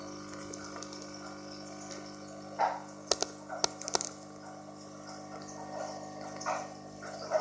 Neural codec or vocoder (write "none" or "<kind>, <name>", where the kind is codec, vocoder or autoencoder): none